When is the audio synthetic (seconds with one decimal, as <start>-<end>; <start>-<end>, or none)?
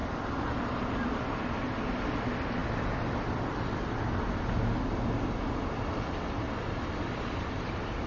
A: none